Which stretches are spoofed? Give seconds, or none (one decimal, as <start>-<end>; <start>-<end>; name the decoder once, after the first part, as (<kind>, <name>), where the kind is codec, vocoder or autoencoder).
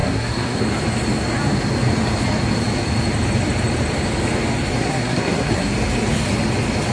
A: 0.0-0.6 (codec, SNAC); 4.8-5.7